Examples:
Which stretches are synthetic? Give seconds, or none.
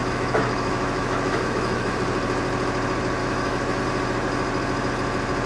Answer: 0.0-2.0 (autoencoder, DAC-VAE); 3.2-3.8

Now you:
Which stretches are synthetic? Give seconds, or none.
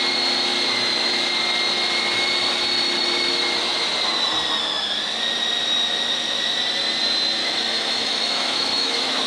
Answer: 7.4-9.3 (autoencoder, DAC-VAE)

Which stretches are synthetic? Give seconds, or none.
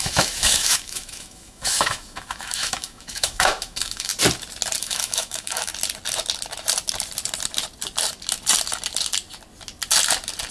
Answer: 0.0-4.1 (autoencoder, DAC-VAE); 4.8-5.7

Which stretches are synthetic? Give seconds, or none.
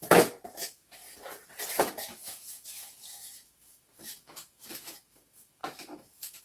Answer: 0.0-1.0 (autoencoder, DAC-VAE); 1.8-6.4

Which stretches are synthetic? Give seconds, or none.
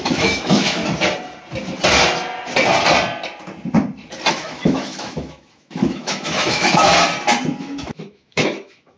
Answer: 0.0-0.8 (autoencoder, DAC-VAE); 4.3-6.9; 7.6-9.0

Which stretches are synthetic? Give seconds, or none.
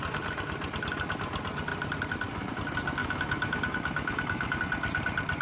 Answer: 3.0-4.6 (autoencoder, DAC-VAE)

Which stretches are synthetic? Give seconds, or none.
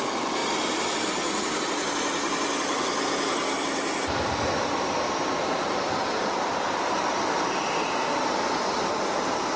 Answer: none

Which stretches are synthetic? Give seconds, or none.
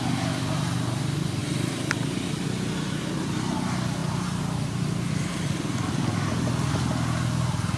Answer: none